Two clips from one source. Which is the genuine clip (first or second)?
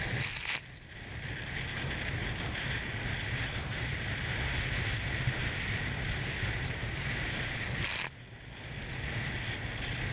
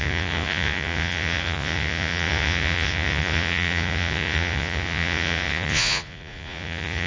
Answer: first